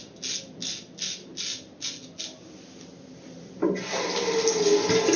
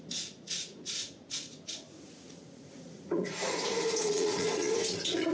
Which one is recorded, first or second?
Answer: first